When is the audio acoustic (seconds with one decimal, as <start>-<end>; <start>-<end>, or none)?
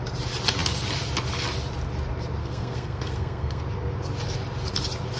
0.0-2.4; 3.6-5.2